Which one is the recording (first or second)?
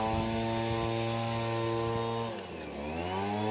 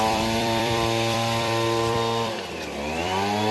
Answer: first